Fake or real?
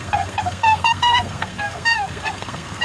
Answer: fake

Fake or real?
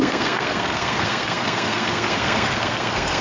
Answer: fake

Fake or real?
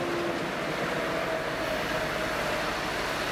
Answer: real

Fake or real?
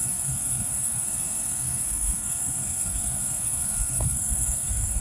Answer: fake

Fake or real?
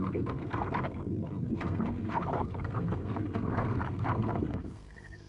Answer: fake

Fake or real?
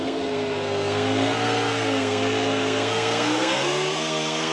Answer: fake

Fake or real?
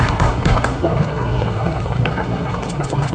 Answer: fake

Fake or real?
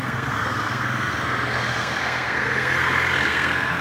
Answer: fake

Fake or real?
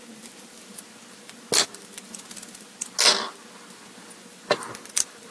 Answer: real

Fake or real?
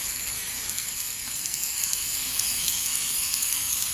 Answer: fake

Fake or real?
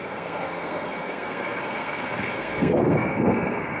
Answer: fake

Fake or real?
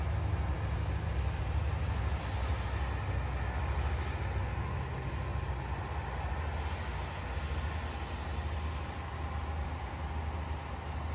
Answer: real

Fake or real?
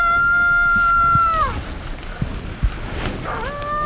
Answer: real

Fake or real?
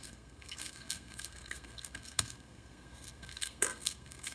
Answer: fake